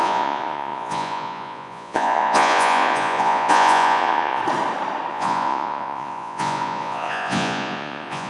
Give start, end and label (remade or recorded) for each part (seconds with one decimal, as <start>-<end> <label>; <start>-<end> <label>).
0.0-4.4 remade; 4.4-5.1 recorded; 5.1-8.3 remade